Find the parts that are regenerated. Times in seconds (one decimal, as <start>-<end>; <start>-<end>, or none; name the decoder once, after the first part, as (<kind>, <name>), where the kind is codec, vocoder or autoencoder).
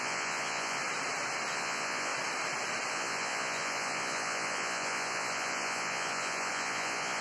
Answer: 0.0-0.8 (vocoder, Vocos); 1.5-2.1; 2.9-7.2